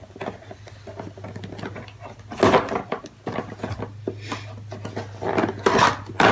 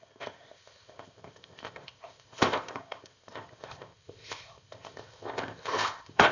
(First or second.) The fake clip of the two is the second